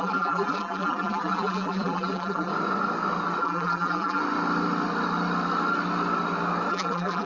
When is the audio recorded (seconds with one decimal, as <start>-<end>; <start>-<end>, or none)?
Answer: 2.5-3.4; 4.2-6.7